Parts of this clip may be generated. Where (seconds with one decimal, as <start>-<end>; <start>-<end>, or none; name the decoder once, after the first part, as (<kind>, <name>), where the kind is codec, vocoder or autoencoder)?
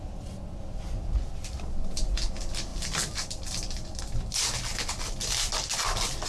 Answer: none